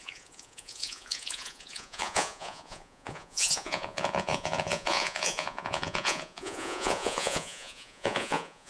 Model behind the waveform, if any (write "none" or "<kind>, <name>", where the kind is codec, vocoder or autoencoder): vocoder, Vocos